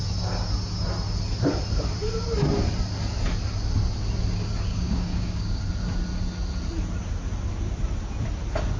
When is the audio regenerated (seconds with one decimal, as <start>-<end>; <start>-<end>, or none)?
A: 4.7-5.7